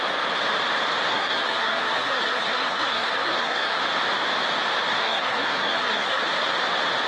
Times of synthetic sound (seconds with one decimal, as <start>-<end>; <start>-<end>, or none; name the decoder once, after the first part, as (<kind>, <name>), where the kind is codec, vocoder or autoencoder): 1.1-3.8 (codec, SNAC); 5.0-6.2